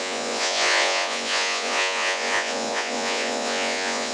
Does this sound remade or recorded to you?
remade